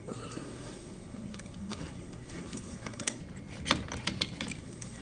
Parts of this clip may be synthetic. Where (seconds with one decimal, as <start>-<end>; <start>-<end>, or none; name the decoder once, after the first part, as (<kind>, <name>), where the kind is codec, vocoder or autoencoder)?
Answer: 0.0-3.2 (codec, SNAC); 4.6-5.0